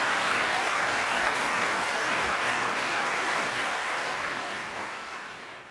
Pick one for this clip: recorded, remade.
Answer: remade